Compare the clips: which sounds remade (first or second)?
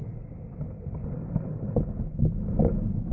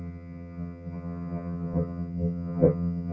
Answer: second